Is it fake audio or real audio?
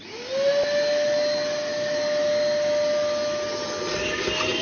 real